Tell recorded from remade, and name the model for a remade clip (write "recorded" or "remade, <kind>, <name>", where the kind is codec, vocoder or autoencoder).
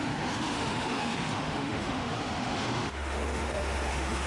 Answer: remade, autoencoder, DAC-VAE